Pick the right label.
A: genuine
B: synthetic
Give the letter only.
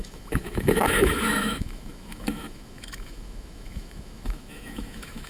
B